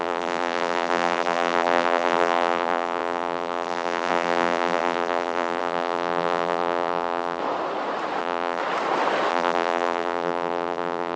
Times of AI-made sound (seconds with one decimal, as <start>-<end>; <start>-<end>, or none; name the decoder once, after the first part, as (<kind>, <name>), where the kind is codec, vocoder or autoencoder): 0.0-7.4 (vocoder, BigVGAN v2); 8.2-8.6; 9.3-11.2